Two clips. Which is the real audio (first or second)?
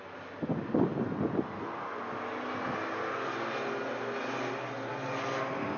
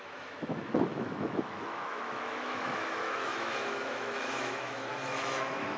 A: first